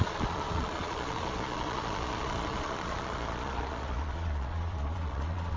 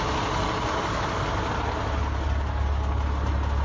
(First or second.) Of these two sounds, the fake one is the first